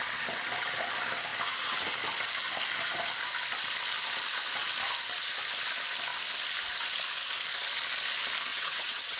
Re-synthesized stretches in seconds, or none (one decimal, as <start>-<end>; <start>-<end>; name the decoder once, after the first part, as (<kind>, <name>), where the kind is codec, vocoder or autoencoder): 8.5-9.2 (vocoder, WaveNeXt)